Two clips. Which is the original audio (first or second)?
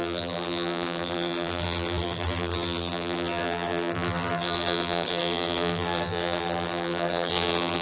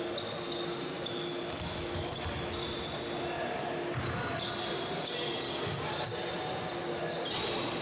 second